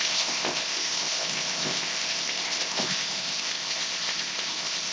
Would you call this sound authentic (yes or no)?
no